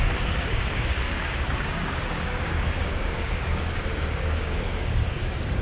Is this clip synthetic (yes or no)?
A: yes